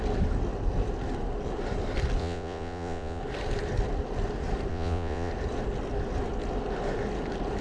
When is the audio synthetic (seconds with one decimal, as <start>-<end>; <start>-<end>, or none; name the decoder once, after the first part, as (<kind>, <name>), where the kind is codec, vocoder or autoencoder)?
2.2-3.2 (vocoder, Vocos); 4.7-5.3